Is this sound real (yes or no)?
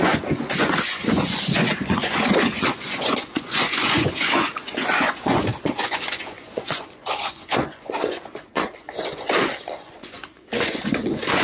no